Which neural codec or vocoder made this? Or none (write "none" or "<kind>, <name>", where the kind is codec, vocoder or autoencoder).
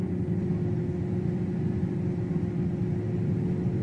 none